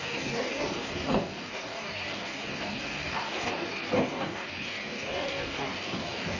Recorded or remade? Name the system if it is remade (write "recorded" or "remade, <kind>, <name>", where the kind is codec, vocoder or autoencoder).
remade, codec, DAC